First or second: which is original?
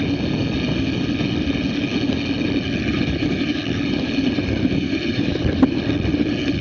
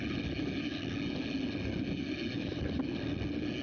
second